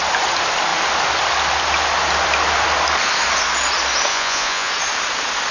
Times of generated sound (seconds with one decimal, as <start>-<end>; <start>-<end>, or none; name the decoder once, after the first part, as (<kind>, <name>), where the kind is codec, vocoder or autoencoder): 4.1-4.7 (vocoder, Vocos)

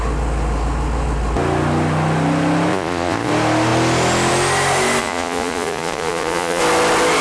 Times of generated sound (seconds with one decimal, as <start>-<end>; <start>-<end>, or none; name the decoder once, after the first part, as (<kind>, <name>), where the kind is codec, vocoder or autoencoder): 2.7-3.3 (vocoder, Vocos); 5.0-6.6

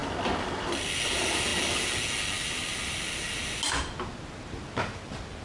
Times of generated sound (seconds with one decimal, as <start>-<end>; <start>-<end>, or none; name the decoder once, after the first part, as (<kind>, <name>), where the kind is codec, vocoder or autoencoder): none

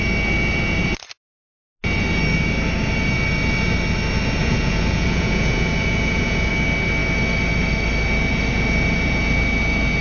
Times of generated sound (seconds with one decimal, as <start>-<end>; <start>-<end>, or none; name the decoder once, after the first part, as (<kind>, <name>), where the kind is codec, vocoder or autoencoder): 4.4-6.5 (vocoder, Vocos)